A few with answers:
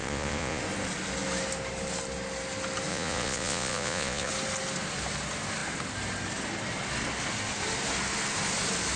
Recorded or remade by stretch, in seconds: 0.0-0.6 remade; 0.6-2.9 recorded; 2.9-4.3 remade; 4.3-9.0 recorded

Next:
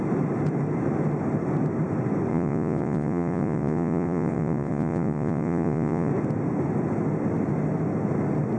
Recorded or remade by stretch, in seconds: 0.0-2.3 recorded; 2.3-6.1 remade; 6.1-8.6 recorded

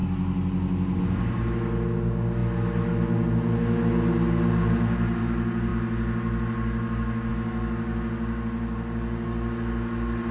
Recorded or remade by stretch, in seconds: 0.0-10.3 recorded

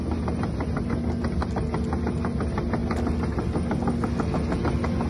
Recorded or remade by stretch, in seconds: 0.0-5.1 recorded